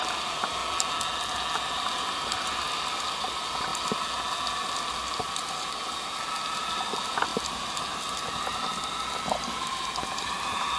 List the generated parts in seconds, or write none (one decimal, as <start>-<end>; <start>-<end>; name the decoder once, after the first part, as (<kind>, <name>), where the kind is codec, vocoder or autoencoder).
0.0-0.6 (vocoder, BigVGAN v2); 1.6-3.7; 5.2-10.8